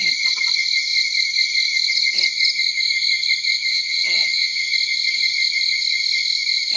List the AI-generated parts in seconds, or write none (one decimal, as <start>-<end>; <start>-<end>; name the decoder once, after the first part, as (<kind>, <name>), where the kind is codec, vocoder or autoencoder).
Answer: 3.7-4.7 (vocoder, WaveNeXt)